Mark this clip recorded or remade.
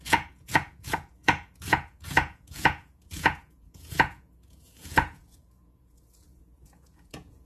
remade